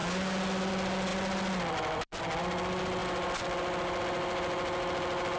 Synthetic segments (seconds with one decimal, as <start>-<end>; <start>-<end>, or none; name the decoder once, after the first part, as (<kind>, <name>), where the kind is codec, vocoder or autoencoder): none